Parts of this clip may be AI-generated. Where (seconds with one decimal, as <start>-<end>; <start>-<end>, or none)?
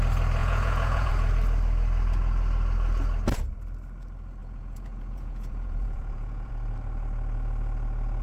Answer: 0.4-1.1; 4.4-6.5